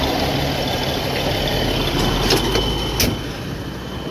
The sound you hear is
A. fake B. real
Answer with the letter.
B